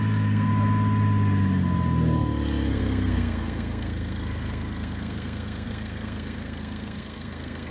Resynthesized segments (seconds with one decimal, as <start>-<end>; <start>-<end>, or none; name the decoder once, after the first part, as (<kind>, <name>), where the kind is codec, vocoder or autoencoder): 0.0-0.5 (codec, SNAC); 2.7-7.7